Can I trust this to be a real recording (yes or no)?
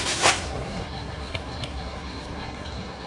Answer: no